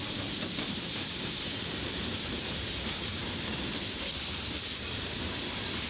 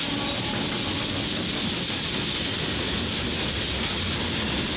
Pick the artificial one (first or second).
first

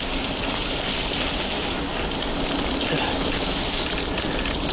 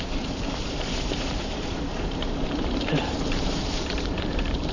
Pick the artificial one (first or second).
second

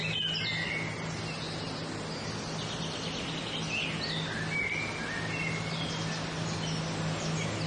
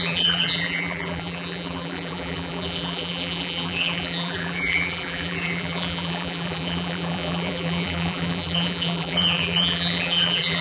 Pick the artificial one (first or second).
second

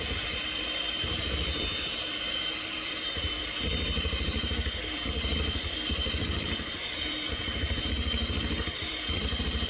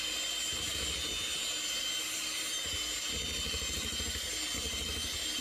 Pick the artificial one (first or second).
first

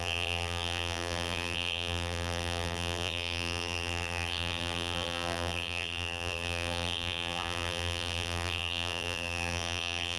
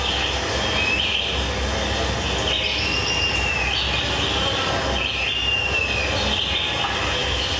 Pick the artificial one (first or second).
first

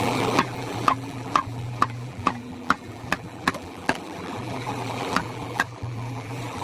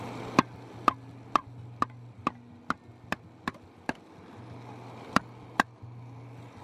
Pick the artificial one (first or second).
first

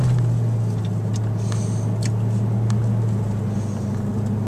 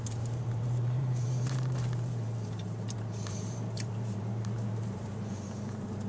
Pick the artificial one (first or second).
second